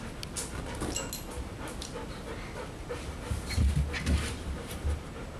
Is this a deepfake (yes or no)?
no